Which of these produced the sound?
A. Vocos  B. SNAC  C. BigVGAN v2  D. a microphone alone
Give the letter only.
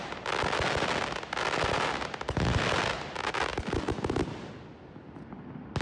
D